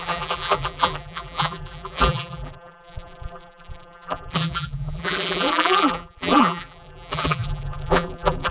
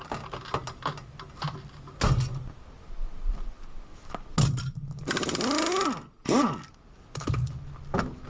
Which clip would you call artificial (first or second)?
first